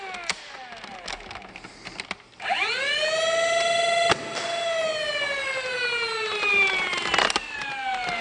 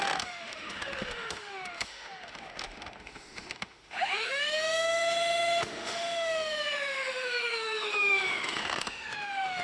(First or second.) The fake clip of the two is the second